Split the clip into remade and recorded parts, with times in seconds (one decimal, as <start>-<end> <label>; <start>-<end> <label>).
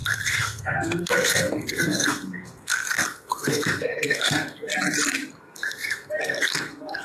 0.0-4.7 remade; 4.7-5.4 recorded; 5.4-7.0 remade